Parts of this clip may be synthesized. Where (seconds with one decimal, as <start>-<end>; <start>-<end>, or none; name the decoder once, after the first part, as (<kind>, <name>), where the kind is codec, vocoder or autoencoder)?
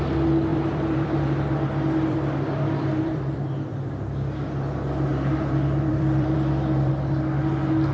0.5-3.4 (vocoder, BigVGAN v2); 5.1-6.9